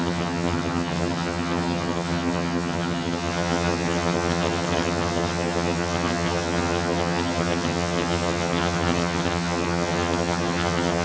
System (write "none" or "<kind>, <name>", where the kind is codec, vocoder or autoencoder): vocoder, HiFi-GAN